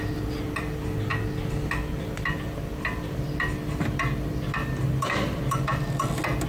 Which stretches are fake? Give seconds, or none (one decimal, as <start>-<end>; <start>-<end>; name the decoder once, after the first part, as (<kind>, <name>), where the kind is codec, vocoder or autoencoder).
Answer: 0.0-1.1 (vocoder, BigVGAN v2); 2.0-6.5